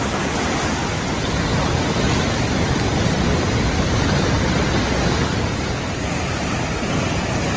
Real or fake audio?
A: real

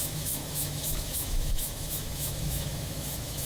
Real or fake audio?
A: fake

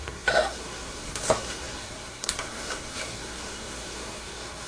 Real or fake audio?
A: fake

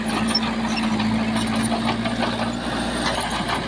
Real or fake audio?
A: real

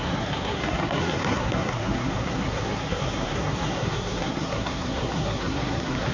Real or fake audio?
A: fake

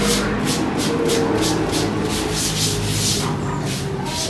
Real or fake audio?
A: real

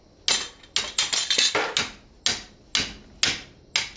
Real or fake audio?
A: real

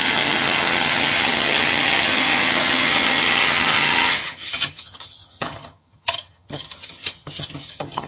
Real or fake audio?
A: fake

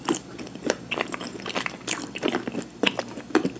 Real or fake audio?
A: real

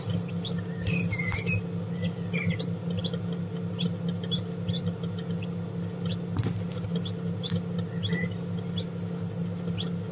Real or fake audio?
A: real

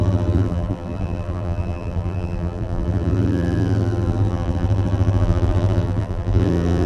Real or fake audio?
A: fake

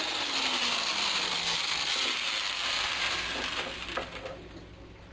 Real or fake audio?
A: real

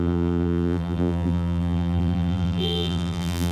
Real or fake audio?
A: fake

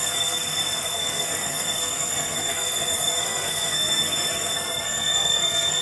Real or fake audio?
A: fake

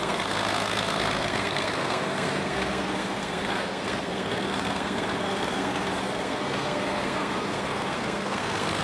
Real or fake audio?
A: fake